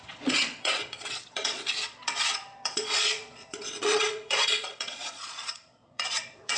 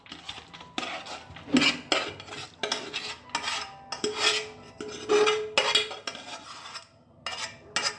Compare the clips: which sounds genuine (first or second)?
second